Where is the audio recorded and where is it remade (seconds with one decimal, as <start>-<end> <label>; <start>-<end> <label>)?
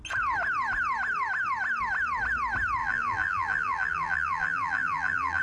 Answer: 0.0-2.8 recorded; 2.8-5.4 remade